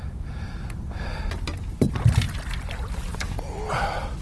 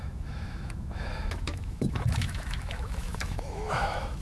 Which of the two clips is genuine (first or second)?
first